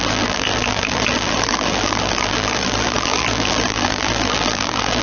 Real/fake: fake